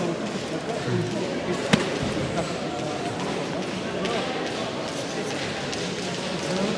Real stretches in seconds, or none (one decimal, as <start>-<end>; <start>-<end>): 0.0-1.3; 2.7-6.8